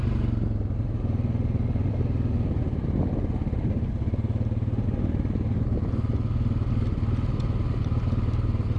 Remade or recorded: recorded